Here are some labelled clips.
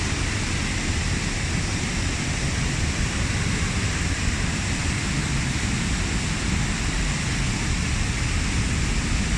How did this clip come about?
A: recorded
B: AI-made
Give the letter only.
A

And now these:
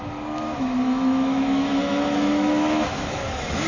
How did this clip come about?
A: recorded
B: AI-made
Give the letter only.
B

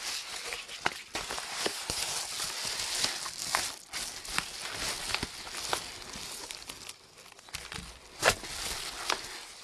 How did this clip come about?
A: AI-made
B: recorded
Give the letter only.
B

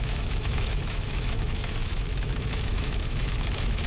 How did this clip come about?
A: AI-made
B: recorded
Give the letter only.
A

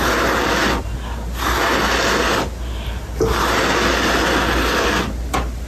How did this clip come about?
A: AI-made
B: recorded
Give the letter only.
B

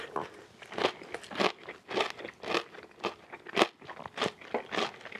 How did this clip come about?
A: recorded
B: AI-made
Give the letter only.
A